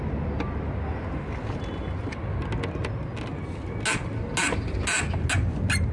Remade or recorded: recorded